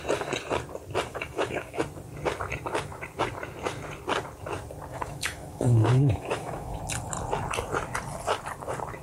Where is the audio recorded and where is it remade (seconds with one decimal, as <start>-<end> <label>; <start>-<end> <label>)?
0.0-1.1 recorded; 1.1-1.8 remade; 1.8-4.9 recorded; 4.9-6.8 remade; 6.8-9.0 recorded